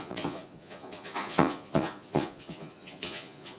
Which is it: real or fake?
fake